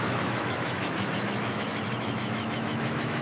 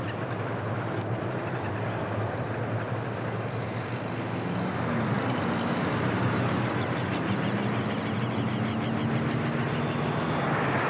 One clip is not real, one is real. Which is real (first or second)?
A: second